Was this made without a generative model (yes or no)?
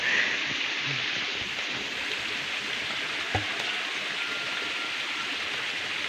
yes